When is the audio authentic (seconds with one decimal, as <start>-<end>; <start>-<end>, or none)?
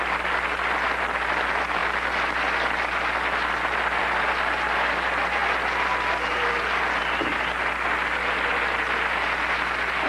0.0-10.1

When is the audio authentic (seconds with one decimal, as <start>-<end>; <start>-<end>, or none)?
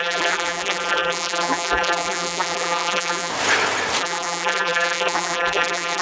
3.3-4.0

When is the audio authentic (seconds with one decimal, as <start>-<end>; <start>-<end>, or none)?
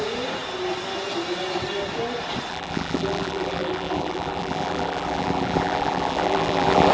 0.0-2.5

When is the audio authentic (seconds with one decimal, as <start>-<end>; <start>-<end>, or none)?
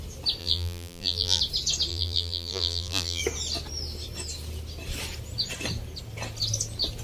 0.0-0.4; 1.4-1.9; 3.2-7.0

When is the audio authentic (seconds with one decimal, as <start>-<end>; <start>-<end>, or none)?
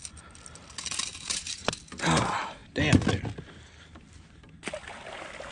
0.0-1.1; 1.7-5.5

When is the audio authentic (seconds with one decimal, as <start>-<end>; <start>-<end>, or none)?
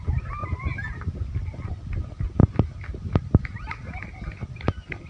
0.0-5.1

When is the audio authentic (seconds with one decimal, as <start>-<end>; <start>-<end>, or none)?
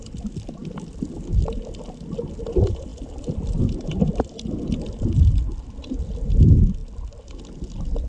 0.0-8.1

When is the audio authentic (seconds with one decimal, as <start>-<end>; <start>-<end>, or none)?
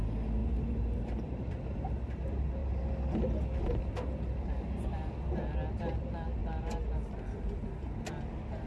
0.0-0.4; 1.4-6.4; 7.7-8.7